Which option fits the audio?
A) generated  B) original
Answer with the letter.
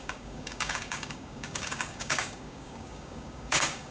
A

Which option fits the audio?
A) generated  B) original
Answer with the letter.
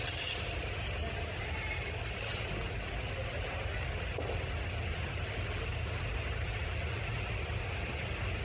B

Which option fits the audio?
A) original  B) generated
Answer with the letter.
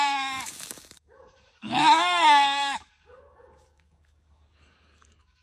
B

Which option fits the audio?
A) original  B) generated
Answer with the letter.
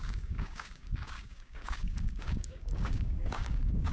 B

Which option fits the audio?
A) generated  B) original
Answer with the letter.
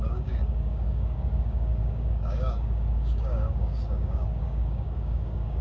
A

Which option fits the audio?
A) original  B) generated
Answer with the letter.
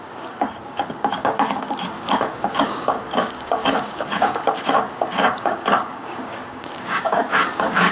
B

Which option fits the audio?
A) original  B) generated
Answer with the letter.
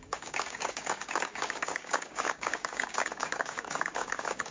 B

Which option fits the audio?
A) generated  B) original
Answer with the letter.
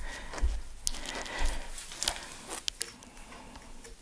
B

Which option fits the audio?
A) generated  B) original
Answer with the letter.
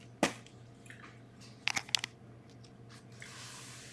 B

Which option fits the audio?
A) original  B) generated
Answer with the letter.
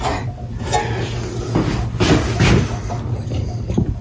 A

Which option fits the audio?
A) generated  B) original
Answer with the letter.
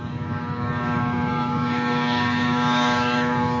A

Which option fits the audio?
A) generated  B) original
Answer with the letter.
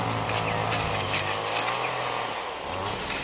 B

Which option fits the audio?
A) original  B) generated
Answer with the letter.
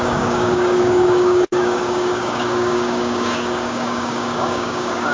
B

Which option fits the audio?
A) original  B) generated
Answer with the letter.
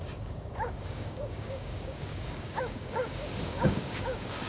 B